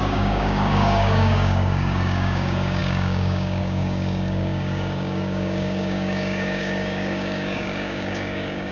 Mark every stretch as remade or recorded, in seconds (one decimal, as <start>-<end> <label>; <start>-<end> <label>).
0.0-8.7 remade